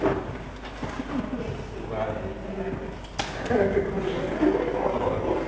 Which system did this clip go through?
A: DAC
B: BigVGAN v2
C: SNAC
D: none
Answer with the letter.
D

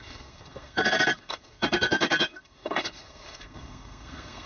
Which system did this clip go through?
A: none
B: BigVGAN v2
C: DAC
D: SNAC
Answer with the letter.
D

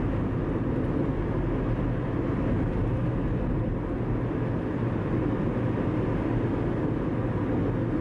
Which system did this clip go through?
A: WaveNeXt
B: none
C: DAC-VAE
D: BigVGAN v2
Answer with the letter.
B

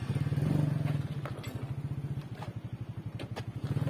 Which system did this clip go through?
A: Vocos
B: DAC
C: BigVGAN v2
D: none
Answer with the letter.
D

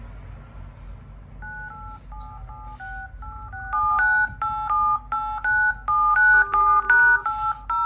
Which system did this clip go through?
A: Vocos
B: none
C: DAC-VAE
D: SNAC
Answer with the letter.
B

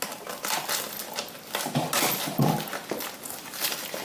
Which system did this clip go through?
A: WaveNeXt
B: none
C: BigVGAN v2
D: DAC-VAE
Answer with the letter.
B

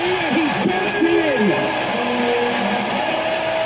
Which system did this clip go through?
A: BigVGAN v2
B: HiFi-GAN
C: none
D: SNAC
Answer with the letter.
C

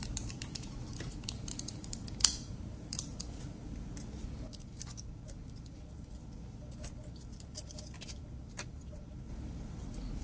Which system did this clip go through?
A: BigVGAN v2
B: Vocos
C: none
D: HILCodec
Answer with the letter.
A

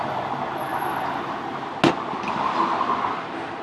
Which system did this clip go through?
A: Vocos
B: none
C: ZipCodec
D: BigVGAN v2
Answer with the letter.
B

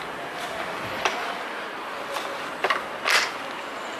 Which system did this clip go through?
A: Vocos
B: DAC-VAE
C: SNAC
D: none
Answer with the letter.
D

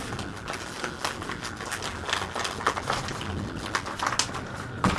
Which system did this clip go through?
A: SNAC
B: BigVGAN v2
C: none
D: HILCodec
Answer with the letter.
C